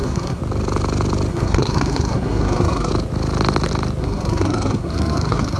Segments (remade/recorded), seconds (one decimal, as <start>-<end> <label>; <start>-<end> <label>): 0.0-0.4 remade; 0.4-1.3 recorded; 1.3-2.9 remade; 2.9-4.0 recorded; 4.0-5.6 remade